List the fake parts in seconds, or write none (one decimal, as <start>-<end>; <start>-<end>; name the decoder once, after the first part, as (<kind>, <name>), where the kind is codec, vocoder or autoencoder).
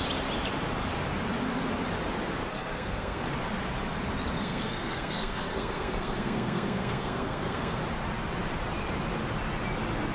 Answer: 2.5-3.2 (codec, SNAC); 4.4-7.8